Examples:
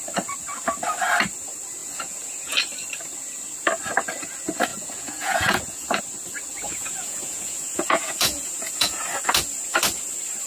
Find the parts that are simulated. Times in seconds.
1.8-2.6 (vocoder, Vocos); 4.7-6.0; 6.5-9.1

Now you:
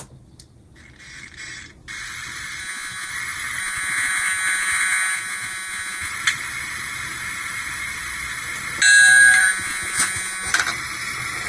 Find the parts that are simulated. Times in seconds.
2.6-3.1 (vocoder, Vocos); 3.6-6.1; 9.4-10.5

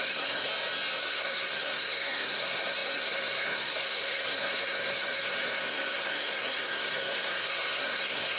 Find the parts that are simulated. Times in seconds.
0.0-0.5 (codec, SNAC); 1.0-8.4

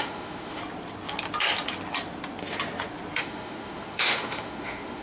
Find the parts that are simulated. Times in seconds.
0.0-0.6 (autoencoder, DAC-VAE); 3.2-5.0